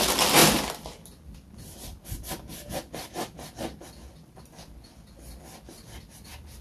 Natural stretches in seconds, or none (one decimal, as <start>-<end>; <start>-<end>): 0.0-6.6